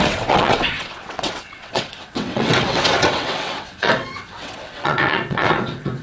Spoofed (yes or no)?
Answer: yes